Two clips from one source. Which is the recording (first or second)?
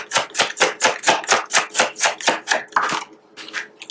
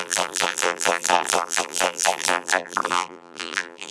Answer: first